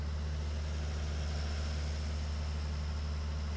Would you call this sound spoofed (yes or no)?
no